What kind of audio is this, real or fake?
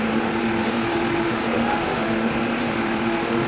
fake